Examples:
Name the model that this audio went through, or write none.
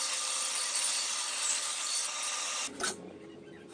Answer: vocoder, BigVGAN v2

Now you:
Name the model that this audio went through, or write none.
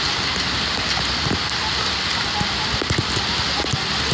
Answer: none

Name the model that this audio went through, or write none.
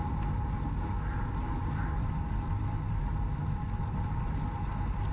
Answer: none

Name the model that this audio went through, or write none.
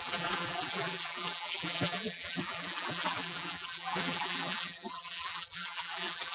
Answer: vocoder, BigVGAN v2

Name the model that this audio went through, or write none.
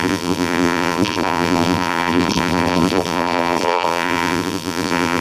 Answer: vocoder, BigVGAN v2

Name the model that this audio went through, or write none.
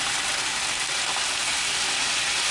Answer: none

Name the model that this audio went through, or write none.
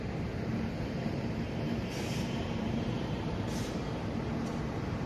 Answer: vocoder, BigVGAN v2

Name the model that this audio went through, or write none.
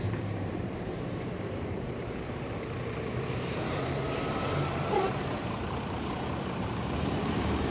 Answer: vocoder, BigVGAN v2